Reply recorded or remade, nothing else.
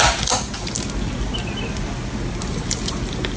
recorded